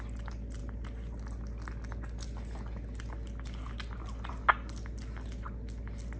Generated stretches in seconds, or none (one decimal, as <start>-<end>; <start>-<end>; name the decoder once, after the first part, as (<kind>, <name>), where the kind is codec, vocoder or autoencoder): none